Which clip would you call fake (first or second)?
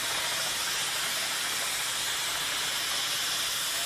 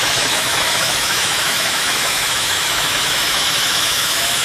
second